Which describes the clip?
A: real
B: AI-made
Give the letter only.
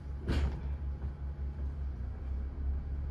A